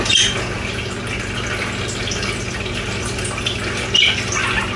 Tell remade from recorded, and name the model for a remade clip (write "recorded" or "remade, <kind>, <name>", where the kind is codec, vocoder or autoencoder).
recorded